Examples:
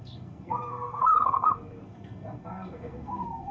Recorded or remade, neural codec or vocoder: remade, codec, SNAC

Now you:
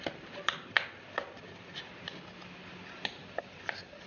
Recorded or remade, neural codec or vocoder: recorded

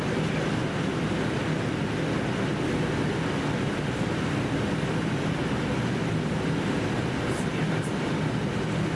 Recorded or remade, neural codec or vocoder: recorded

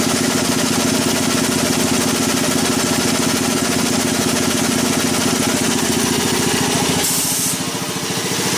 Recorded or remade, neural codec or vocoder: recorded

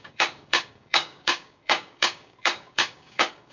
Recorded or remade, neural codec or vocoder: remade, codec, DAC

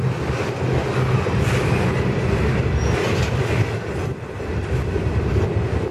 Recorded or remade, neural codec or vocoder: recorded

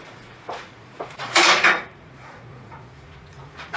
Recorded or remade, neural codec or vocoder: remade, vocoder, Vocos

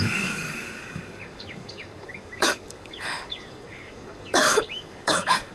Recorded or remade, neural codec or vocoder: remade, codec, DAC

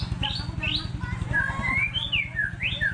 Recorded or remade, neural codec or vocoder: recorded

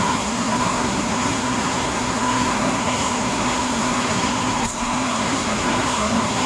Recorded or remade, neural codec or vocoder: remade, codec, SNAC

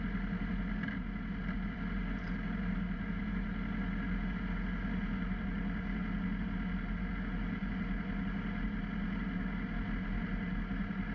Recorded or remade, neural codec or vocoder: recorded